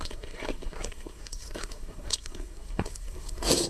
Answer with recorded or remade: remade